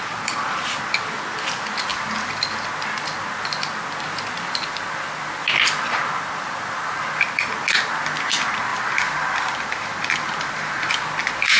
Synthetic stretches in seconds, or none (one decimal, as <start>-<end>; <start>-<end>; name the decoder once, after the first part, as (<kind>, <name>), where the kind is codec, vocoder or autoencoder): 1.9-2.7 (vocoder, BigVGAN v2); 8.7-10.9